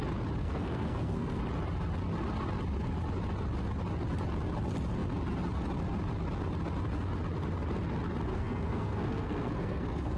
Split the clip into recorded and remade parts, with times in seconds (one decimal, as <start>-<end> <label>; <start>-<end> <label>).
0.0-0.4 recorded; 0.4-1.4 remade; 1.4-8.3 recorded; 8.3-10.2 remade